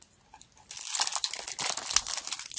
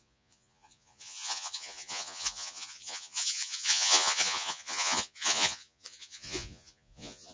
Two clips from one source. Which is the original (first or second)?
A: first